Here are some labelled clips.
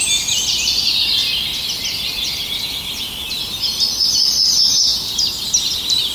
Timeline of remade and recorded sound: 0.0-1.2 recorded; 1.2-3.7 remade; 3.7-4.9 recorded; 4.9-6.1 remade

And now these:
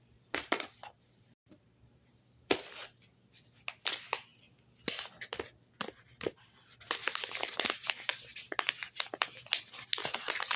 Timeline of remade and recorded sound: 0.0-2.8 remade; 2.8-3.9 recorded; 3.9-4.3 remade; 4.3-5.8 recorded; 5.8-8.1 remade; 8.1-10.6 recorded

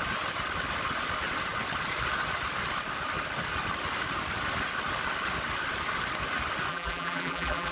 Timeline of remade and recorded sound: 0.0-6.7 recorded; 6.7-7.7 remade

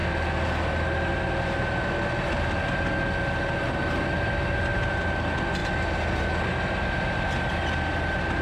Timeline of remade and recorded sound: 0.0-8.4 recorded

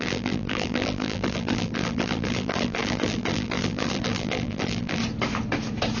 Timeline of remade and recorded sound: 0.0-5.0 remade; 5.0-6.0 recorded

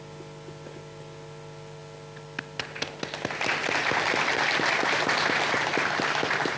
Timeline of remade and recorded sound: 0.0-6.6 recorded

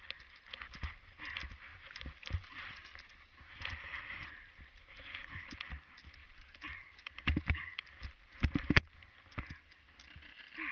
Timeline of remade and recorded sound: 0.0-1.7 recorded; 1.7-2.8 remade; 2.8-3.9 recorded; 3.9-5.5 remade; 5.5-6.2 recorded; 6.2-9.1 remade; 9.1-10.7 recorded

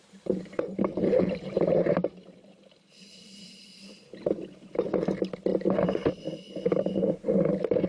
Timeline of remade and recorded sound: 0.0-4.7 remade; 4.7-5.5 recorded; 5.5-6.2 remade; 6.2-7.9 recorded